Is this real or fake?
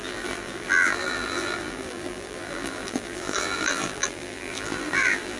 fake